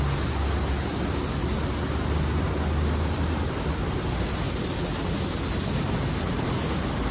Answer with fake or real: real